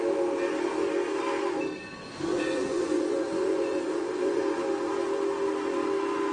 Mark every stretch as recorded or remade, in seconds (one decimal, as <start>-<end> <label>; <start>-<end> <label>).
0.0-2.3 recorded; 2.3-4.4 remade; 4.4-6.3 recorded